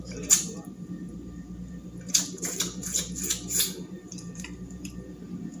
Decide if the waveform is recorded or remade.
remade